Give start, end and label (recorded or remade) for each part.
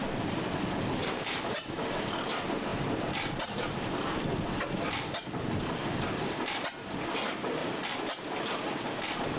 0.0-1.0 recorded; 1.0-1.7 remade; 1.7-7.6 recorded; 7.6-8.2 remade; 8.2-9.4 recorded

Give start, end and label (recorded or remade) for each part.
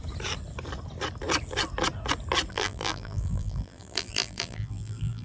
0.0-2.5 recorded; 2.5-5.2 remade